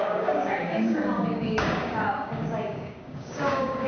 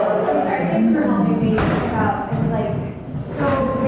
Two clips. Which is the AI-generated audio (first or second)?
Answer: first